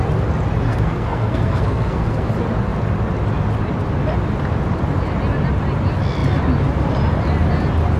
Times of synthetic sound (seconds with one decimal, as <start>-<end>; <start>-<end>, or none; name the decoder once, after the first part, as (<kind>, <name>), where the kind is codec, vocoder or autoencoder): 0.7-2.3 (codec, SNAC)